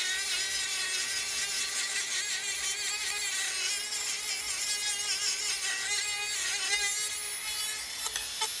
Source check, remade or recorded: recorded